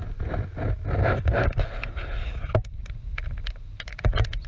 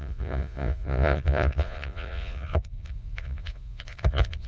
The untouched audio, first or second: first